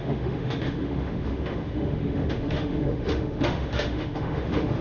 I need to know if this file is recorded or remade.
remade